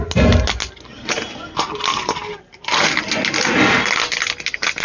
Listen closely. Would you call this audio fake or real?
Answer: real